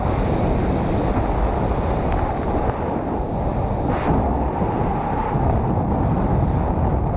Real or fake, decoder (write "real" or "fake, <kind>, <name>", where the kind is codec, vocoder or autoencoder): real